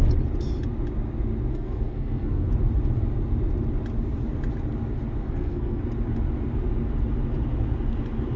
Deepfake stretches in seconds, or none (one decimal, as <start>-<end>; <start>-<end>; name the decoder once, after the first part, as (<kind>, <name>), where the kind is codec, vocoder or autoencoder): 1.5-2.5 (codec, SNAC); 5.2-5.8